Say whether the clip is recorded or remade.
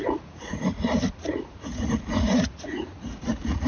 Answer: remade